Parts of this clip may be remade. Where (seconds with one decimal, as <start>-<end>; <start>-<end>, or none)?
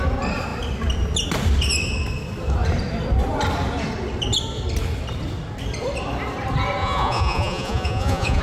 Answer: 6.8-8.4